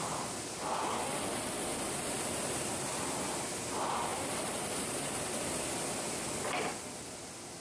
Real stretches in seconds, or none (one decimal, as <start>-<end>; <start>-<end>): 0.0-4.1; 5.6-7.6